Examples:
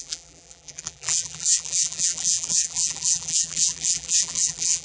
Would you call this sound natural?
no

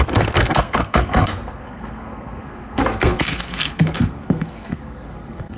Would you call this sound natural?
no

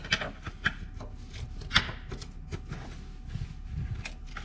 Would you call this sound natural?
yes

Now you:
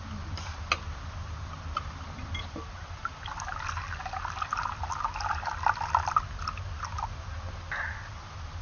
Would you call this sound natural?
yes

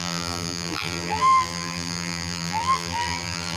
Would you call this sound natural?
no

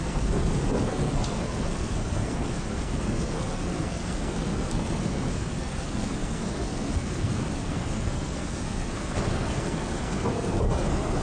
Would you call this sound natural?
no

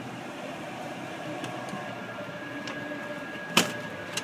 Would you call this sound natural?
no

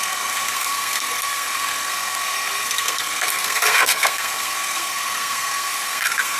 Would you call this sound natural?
no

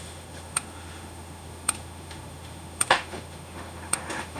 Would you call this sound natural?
no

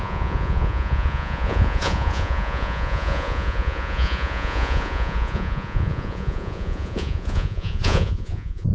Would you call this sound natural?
no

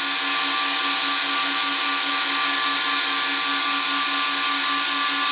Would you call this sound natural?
yes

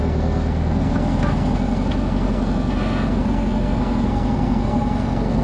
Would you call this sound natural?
no